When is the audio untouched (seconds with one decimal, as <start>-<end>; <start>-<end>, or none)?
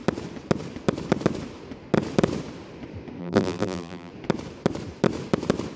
0.0-3.2; 4.1-5.8